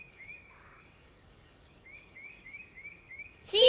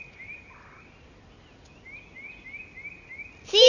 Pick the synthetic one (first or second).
first